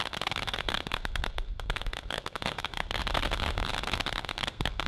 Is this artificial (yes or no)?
yes